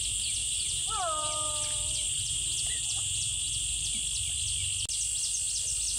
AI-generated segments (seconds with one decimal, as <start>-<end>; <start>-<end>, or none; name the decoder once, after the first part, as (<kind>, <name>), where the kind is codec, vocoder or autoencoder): 0.4-4.0 (vocoder, BigVGAN v2)